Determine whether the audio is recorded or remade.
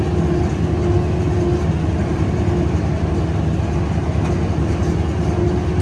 recorded